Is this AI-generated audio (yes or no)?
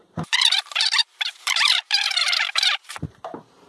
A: yes